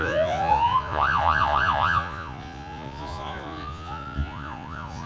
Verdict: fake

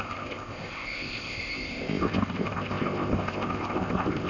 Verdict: fake